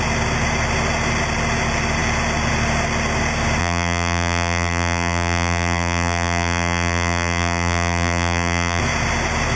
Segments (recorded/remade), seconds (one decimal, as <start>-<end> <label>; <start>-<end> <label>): 0.0-3.6 recorded; 3.6-8.8 remade; 8.8-9.6 recorded